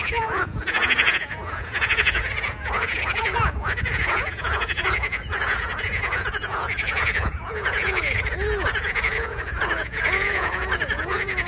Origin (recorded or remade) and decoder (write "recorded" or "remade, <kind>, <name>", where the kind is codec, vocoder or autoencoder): remade, vocoder, Vocos